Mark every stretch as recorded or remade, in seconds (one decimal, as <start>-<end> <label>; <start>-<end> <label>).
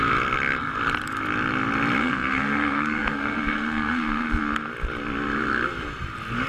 0.0-2.0 recorded; 2.0-4.4 remade; 4.4-6.5 recorded